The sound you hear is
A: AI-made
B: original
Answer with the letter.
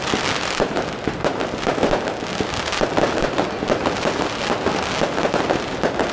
B